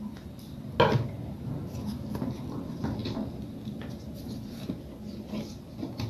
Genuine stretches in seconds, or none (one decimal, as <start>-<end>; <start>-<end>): 0.0-6.1